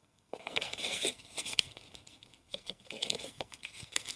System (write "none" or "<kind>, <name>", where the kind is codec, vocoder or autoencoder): codec, SNAC